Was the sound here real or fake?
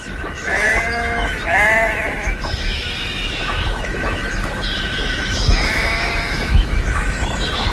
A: fake